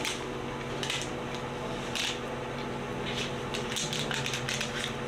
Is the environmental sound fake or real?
real